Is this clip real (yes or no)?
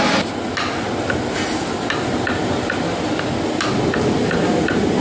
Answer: yes